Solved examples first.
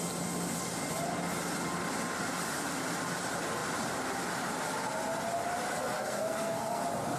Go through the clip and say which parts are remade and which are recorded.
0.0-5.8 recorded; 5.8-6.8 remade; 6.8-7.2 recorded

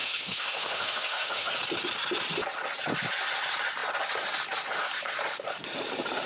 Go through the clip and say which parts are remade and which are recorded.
0.0-1.5 remade; 1.5-6.3 recorded

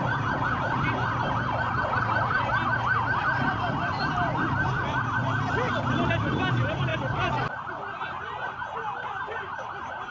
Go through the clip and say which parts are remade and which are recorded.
0.0-10.1 recorded

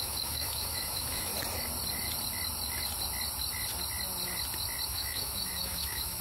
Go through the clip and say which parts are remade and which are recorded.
0.0-1.3 remade; 1.3-4.9 recorded; 4.9-6.2 remade

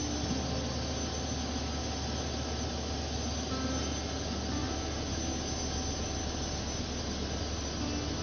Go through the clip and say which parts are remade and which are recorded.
0.0-8.2 recorded

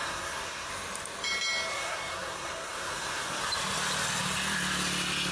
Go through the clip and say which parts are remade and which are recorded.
0.0-0.7 remade; 0.7-1.7 recorded; 1.7-3.4 remade; 3.4-5.3 recorded

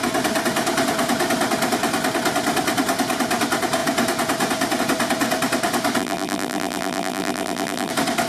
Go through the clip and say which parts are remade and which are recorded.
0.0-6.0 recorded; 6.0-7.9 remade; 7.9-8.3 recorded